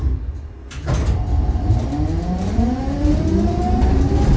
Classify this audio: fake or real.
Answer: real